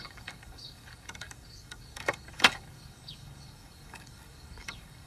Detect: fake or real fake